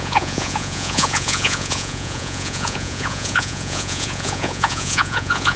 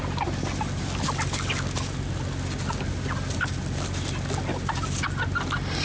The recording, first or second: second